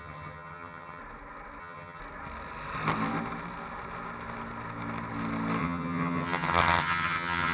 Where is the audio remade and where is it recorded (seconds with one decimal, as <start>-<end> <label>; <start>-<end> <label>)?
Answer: 0.0-1.0 remade; 1.0-1.6 recorded; 1.6-2.0 remade; 2.0-5.6 recorded; 5.6-7.5 remade